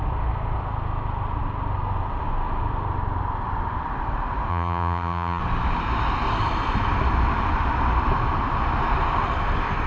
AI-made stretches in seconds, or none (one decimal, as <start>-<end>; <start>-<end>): 4.5-5.4